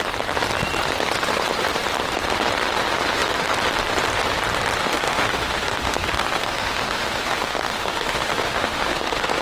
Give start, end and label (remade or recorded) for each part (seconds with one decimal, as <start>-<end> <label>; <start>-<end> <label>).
0.0-4.8 recorded; 4.8-9.4 remade